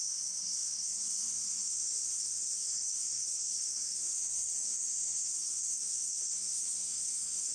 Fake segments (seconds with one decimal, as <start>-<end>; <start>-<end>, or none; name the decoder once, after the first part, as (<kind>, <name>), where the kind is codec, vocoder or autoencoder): 0.0-7.5 (codec, SNAC)